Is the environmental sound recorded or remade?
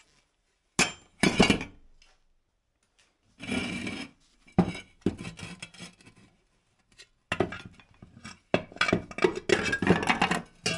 recorded